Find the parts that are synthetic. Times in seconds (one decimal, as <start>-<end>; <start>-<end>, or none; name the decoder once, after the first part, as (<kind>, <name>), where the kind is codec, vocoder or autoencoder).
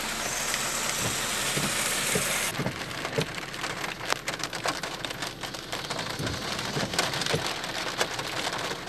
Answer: none